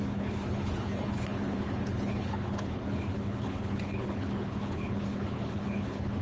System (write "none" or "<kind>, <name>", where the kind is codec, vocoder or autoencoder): codec, HILCodec